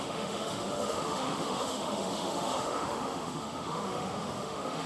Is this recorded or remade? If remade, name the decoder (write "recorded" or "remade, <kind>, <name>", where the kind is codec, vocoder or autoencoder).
remade, autoencoder, DAC-VAE